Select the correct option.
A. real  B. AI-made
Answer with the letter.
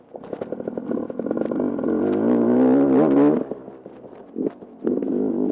A